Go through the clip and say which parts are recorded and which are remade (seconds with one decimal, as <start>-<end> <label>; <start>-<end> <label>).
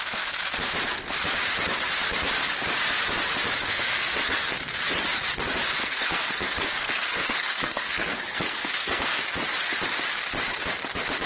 0.0-3.7 recorded; 3.7-4.6 remade; 4.6-5.8 recorded; 5.8-9.2 remade; 9.2-11.3 recorded